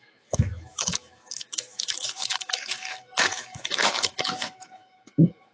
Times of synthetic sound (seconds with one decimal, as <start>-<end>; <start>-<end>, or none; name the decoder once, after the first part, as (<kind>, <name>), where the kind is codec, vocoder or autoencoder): 0.0-5.5 (autoencoder, DAC-VAE)